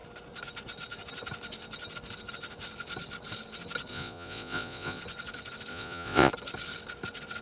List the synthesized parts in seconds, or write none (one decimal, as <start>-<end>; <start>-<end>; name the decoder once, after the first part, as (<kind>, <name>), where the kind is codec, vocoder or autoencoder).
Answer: 3.9-5.0 (vocoder, Vocos); 5.7-6.3